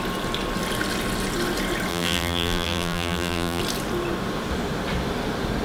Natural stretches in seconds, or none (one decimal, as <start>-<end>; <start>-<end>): 0.0-1.9; 3.6-5.6